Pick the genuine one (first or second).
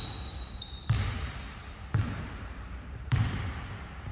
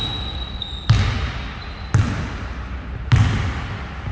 second